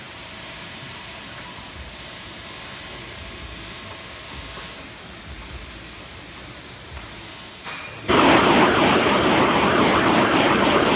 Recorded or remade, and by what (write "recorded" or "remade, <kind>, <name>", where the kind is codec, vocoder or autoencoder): remade, vocoder, BigVGAN v2